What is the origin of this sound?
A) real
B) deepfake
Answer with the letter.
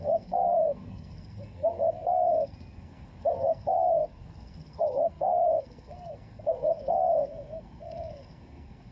B